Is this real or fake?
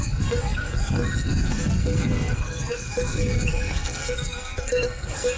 fake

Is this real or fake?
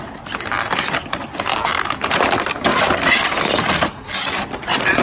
real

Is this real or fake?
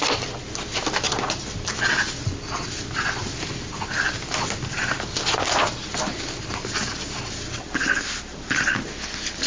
real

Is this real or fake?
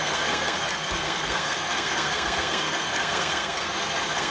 fake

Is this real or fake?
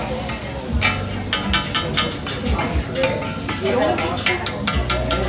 real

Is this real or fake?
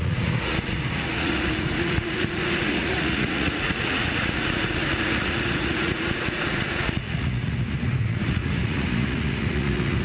fake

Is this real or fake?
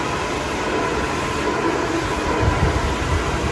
real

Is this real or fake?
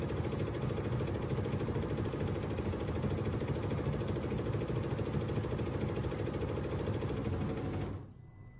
real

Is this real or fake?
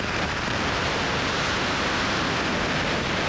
real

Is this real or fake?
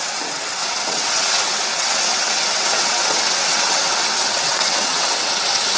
fake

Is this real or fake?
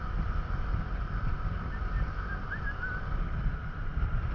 real